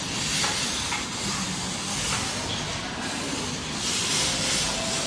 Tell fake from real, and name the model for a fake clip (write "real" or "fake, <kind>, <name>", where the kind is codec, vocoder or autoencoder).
real